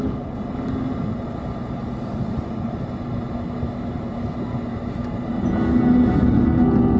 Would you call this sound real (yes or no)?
yes